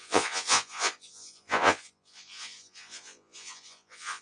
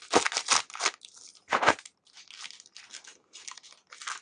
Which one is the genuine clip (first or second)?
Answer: second